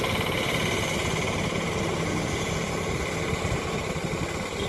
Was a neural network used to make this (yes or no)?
no